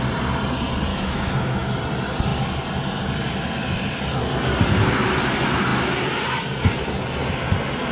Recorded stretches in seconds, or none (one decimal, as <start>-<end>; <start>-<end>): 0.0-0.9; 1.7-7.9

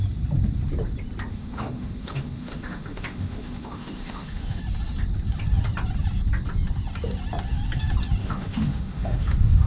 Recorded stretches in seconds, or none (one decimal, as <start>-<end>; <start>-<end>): 0.0-1.3; 4.6-8.2

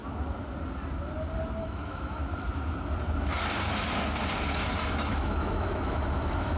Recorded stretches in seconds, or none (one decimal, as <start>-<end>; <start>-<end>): 0.0-1.6; 2.2-5.2

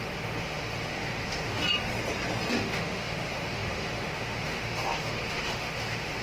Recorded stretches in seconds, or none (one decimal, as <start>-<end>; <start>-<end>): 1.6-2.5

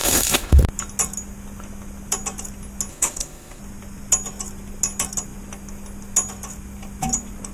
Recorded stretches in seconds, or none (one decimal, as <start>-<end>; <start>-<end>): 0.6-2.9; 3.6-7.5

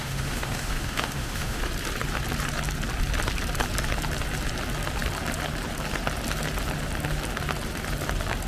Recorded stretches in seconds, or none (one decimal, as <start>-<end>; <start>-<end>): 1.6-8.5

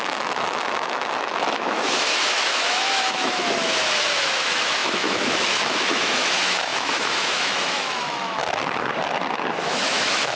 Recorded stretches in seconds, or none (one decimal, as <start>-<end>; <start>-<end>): 8.4-9.6

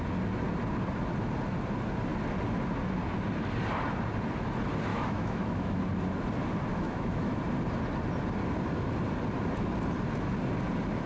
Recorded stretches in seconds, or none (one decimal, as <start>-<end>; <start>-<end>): 0.0-4.9; 5.8-6.7; 7.4-11.1